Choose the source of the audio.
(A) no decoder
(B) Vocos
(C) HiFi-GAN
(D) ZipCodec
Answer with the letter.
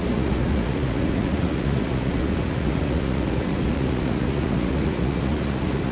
B